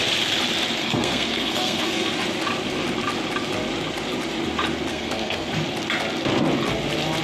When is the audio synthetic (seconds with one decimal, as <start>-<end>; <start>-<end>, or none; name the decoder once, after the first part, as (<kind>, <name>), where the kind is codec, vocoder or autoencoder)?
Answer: 0.8-2.1 (codec, SNAC); 4.9-5.5